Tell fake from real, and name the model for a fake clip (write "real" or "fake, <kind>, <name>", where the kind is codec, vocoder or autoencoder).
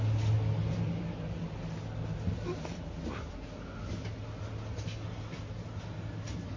real